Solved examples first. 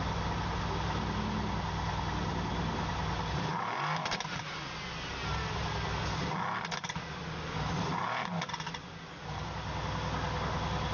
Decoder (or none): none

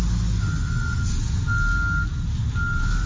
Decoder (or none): none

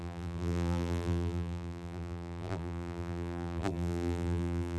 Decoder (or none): vocoder, BigVGAN v2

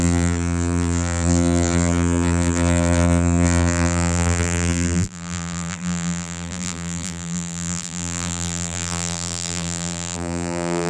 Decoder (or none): vocoder, BigVGAN v2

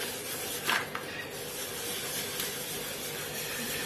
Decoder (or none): none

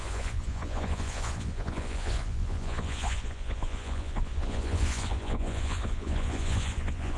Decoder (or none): vocoder, Vocos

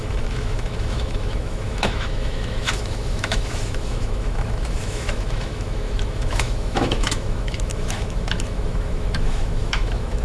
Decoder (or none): autoencoder, DAC-VAE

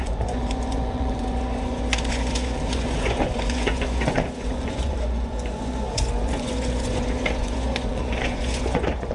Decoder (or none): vocoder, Vocos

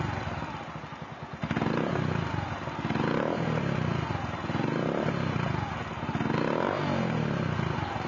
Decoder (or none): none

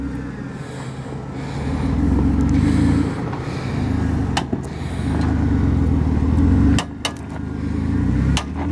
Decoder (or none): none